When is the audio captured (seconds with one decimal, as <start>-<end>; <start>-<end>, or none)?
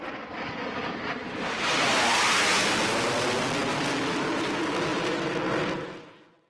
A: 0.0-6.5